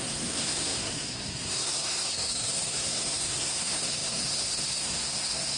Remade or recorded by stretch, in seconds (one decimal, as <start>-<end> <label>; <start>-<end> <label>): 0.0-5.6 remade